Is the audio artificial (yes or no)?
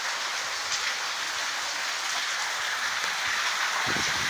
no